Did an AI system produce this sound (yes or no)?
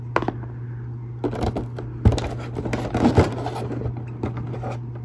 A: no